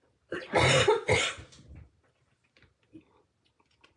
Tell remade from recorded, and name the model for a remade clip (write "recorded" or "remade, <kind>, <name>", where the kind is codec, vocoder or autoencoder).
remade, vocoder, BigVGAN v2